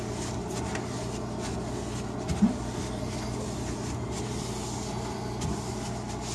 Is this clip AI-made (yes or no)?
no